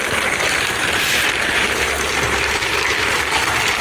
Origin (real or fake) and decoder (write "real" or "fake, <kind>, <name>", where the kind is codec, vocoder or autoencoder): fake, vocoder, BigVGAN v2